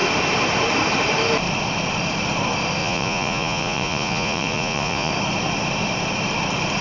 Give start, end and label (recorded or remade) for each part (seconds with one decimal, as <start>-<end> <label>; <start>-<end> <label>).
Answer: 0.0-2.8 recorded; 2.8-5.1 remade; 5.1-6.8 recorded

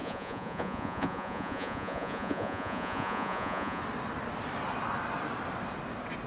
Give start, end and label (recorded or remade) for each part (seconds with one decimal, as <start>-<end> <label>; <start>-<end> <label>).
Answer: 0.0-3.8 remade; 3.8-6.3 recorded

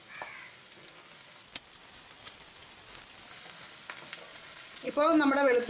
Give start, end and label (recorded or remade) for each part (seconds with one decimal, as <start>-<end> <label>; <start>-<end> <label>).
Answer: 0.0-4.3 recorded; 4.3-4.9 remade; 4.9-5.7 recorded